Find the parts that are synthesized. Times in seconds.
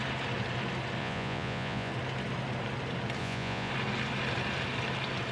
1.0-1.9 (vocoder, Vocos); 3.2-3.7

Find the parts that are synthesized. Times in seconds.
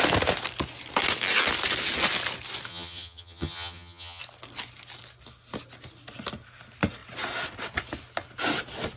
2.7-4.2 (vocoder, HiFi-GAN)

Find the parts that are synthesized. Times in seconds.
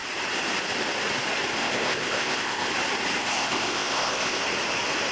1.5-2.7 (codec, ZipCodec); 3.2-4.4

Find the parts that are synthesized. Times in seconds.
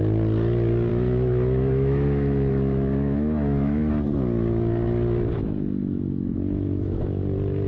0.9-3.9 (autoencoder, DAC-VAE); 5.8-7.2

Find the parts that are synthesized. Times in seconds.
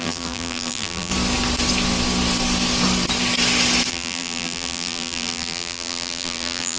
0.0-1.1 (vocoder, BigVGAN v2); 3.9-6.8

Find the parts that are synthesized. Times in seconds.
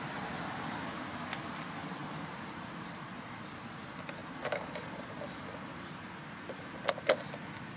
2.0-2.9 (vocoder, BigVGAN v2); 4.2-5.2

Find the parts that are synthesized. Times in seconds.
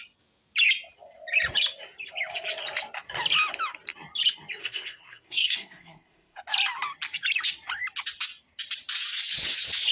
4.6-6.4 (codec, SNAC)